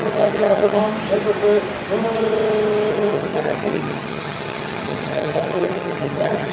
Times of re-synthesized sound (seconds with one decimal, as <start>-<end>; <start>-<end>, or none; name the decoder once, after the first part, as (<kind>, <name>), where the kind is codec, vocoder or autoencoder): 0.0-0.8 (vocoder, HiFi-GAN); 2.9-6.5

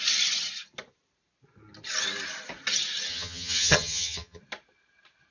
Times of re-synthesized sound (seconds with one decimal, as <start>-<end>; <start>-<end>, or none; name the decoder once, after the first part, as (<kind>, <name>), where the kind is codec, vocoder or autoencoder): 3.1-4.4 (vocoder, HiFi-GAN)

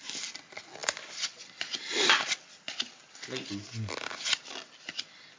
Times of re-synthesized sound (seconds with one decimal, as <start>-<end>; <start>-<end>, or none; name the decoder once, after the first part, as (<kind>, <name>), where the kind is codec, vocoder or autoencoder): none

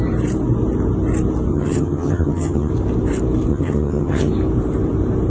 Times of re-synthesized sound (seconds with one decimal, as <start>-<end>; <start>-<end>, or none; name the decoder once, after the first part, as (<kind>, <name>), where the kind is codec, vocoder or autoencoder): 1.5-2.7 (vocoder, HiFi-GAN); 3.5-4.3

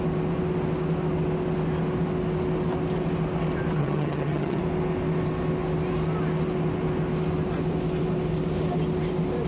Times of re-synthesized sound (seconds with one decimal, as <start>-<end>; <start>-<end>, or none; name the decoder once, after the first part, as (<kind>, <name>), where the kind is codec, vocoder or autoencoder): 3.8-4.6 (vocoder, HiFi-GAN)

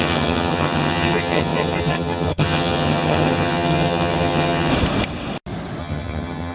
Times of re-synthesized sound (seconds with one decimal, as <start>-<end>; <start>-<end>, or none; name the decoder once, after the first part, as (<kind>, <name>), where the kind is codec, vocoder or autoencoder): 0.0-4.7 (vocoder, HiFi-GAN); 5.8-6.5

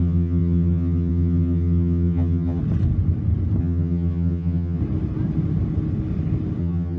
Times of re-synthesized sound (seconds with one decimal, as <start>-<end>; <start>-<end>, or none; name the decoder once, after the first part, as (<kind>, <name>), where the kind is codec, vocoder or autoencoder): 0.0-2.6 (vocoder, HiFi-GAN); 3.6-4.8; 6.6-7.0

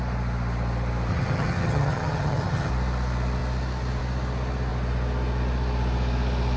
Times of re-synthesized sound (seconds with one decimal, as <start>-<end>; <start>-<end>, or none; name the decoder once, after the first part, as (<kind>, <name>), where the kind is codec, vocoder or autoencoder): 1.1-2.7 (vocoder, HiFi-GAN)